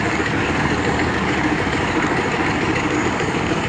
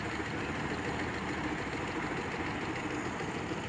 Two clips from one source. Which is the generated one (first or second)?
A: first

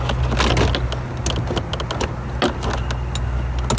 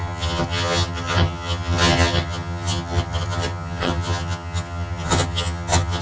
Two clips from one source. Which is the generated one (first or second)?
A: second